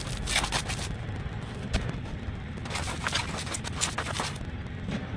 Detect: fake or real real